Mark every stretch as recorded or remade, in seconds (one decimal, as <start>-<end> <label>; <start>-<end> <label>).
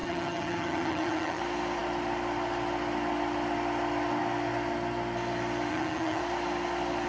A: 0.0-1.4 remade; 1.4-5.7 recorded; 5.7-6.2 remade; 6.2-7.1 recorded